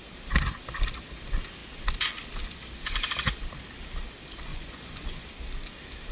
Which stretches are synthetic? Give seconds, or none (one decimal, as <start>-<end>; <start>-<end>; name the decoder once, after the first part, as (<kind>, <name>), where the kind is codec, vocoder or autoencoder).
4.5-5.3 (vocoder, Vocos)